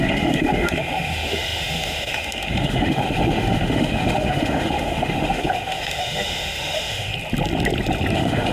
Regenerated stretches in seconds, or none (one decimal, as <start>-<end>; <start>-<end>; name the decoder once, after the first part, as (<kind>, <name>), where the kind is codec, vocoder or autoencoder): 0.0-7.1 (autoencoder, DAC-VAE); 8.1-8.5